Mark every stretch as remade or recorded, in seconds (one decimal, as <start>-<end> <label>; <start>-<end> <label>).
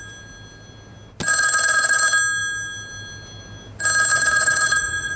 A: 0.0-1.3 recorded; 1.3-2.0 remade; 2.0-4.1 recorded; 4.1-5.2 remade